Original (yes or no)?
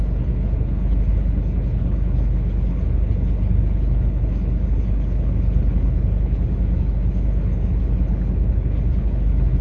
no